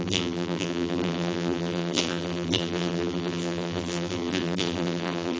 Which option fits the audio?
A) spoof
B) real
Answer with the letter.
A